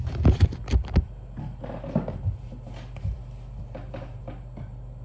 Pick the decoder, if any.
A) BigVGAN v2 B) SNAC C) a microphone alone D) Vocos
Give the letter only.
C